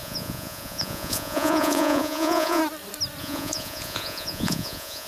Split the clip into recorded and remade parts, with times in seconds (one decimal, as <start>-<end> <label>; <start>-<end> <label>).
0.0-2.6 remade; 2.6-3.2 recorded; 3.2-5.1 remade